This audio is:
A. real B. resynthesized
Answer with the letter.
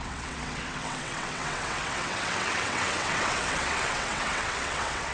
B